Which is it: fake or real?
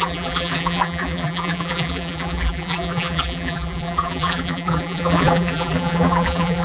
fake